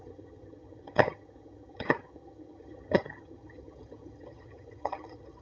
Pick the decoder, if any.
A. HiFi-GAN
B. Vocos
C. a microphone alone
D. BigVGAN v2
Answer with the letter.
A